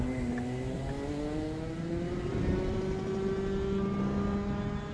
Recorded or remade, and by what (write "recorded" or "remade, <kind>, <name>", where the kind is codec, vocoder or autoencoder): recorded